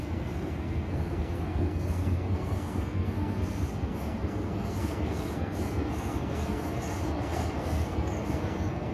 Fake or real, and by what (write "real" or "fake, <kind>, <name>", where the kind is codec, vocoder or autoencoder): fake, codec, SNAC